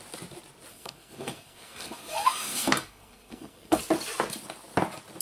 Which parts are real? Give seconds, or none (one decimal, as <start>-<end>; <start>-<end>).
0.0-0.7; 3.8-5.2

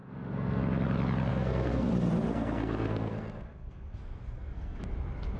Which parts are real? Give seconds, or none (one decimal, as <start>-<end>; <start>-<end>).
0.6-1.3; 1.9-2.3; 4.8-5.4

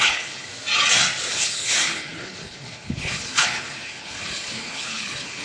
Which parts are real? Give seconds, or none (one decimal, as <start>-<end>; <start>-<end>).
0.5-1.3

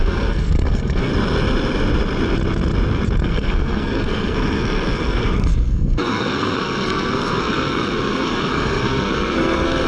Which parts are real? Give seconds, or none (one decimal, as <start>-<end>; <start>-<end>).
1.1-3.2

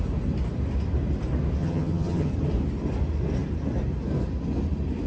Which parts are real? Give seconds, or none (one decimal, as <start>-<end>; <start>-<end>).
0.0-1.6; 2.3-5.1